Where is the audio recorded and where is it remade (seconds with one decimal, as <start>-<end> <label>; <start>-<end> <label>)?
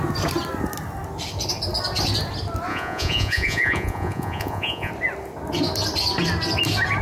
0.0-2.7 recorded; 2.7-4.9 remade; 4.9-7.0 recorded